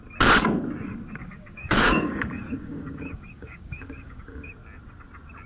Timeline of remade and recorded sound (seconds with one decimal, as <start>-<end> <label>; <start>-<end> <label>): 0.0-1.2 recorded; 1.2-4.5 remade; 4.5-5.5 recorded